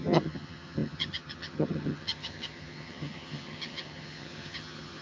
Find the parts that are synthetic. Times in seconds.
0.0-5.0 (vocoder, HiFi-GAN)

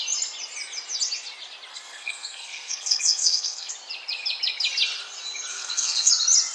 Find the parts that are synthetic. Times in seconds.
1.7-3.7 (codec, SNAC); 5.5-6.1